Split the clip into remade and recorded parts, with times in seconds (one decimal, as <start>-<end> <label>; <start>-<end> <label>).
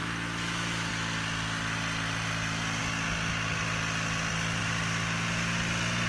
0.0-0.9 remade; 0.9-6.1 recorded